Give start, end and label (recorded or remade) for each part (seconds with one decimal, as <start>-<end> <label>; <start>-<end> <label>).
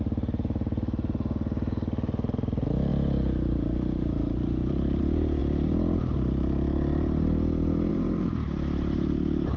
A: 0.0-2.9 recorded; 2.9-5.0 remade; 5.0-7.9 recorded; 7.9-9.6 remade